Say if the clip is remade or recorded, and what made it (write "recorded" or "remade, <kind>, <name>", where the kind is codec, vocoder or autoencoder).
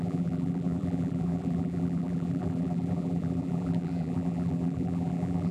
remade, vocoder, BigVGAN v2